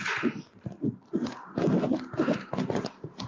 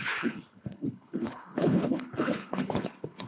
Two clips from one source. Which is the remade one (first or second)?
second